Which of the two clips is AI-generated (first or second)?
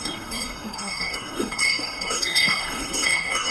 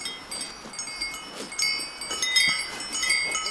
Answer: first